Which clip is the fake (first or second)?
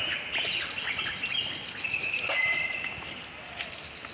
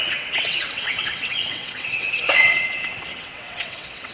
second